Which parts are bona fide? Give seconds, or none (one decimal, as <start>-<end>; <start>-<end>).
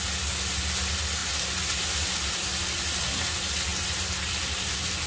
0.0-5.1